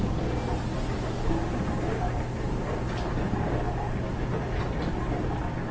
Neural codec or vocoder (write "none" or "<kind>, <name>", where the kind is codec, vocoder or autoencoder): none